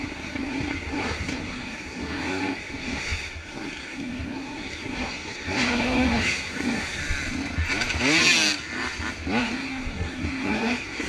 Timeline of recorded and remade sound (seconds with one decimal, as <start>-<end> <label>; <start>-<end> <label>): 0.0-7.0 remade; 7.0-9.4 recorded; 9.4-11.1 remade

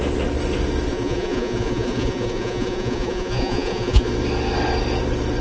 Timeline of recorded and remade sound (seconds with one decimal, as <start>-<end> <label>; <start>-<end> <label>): 0.0-0.9 recorded; 0.9-4.1 remade; 4.1-5.4 recorded

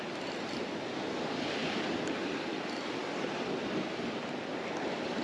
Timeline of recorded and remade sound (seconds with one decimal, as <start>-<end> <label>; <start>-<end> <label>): 0.0-1.6 recorded; 1.6-2.6 remade; 2.6-3.0 recorded; 3.0-4.5 remade; 4.5-5.2 recorded

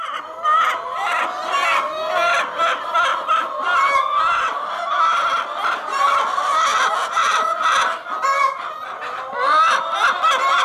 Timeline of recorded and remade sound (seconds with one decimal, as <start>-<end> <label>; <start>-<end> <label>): 0.0-10.6 recorded